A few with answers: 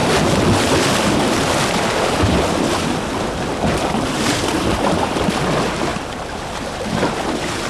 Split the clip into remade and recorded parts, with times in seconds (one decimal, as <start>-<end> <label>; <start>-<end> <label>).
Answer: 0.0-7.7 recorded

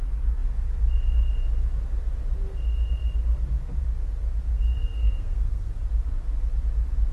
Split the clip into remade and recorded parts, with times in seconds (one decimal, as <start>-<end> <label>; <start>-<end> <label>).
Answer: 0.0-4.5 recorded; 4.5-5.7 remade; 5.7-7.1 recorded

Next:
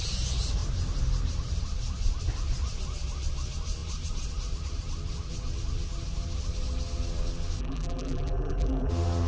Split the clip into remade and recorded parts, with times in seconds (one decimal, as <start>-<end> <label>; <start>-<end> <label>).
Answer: 0.0-7.6 recorded; 7.6-8.9 remade; 8.9-9.3 recorded

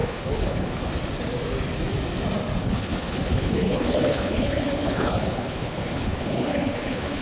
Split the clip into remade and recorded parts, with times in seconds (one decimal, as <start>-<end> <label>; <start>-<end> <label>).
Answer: 0.0-0.9 remade; 0.9-2.6 recorded; 2.6-7.2 remade